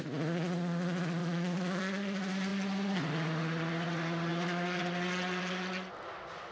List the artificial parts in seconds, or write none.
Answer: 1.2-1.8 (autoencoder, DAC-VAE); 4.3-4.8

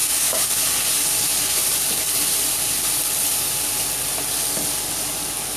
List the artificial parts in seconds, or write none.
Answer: 0.0-0.5 (codec, DAC)